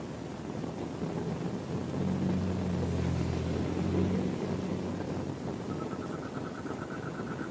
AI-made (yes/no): no